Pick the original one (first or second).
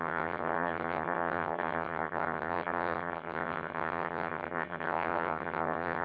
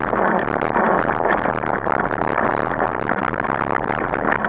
second